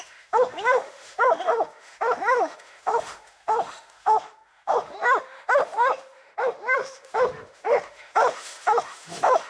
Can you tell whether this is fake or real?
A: fake